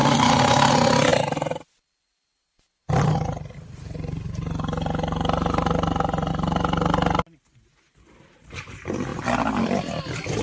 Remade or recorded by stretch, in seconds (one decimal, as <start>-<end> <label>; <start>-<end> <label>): 0.0-10.4 recorded